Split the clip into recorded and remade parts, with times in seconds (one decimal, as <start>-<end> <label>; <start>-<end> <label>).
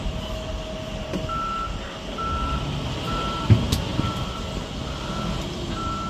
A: 0.0-6.1 recorded